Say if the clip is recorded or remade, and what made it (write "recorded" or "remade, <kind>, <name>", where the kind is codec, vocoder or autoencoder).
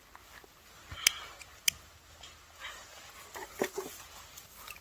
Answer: recorded